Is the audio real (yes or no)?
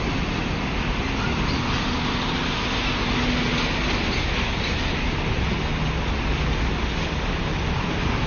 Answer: yes